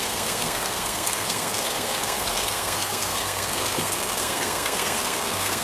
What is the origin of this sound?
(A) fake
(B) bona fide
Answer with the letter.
A